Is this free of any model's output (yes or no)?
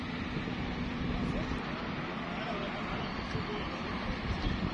yes